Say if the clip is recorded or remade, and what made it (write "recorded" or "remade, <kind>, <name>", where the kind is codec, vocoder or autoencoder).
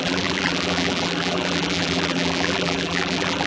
remade, vocoder, BigVGAN v2